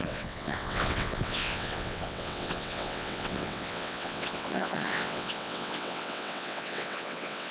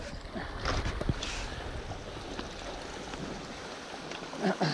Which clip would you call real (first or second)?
second